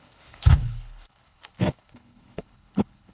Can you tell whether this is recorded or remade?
remade